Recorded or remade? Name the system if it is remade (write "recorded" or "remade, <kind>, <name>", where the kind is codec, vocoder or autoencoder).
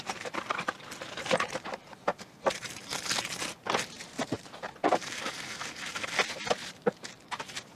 remade, vocoder, BigVGAN v2